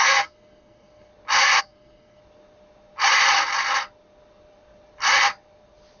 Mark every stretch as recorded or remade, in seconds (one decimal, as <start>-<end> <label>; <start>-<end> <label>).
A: 0.0-1.1 remade; 1.1-1.6 recorded; 1.6-2.2 remade; 2.2-6.0 recorded